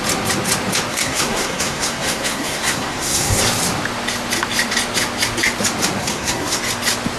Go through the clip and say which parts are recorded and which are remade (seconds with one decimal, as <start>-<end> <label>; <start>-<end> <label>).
0.0-0.9 recorded; 0.9-3.4 remade; 3.4-6.0 recorded; 6.0-6.6 remade; 6.6-7.2 recorded

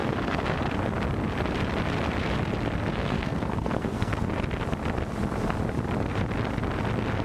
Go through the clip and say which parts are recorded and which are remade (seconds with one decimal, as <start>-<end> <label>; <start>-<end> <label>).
0.0-0.6 remade; 0.6-2.9 recorded; 2.9-4.2 remade; 4.2-7.2 recorded

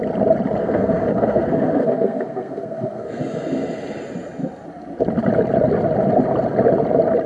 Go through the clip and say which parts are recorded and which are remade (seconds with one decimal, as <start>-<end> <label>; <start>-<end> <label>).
0.0-0.6 recorded; 0.6-3.2 remade; 3.2-7.3 recorded

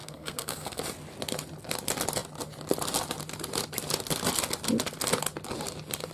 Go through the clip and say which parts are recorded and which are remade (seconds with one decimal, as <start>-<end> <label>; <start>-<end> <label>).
0.0-0.8 remade; 0.8-6.1 recorded

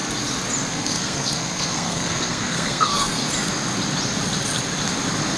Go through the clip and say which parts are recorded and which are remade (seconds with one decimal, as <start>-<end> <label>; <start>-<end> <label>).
0.0-0.7 recorded; 0.7-3.2 remade; 3.2-5.4 recorded

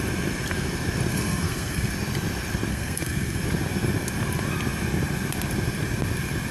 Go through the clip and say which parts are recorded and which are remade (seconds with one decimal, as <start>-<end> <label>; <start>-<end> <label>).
0.0-1.1 recorded; 1.1-1.9 remade; 1.9-2.7 recorded; 2.7-3.4 remade; 3.4-6.5 recorded